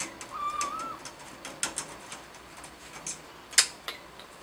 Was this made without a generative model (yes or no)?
yes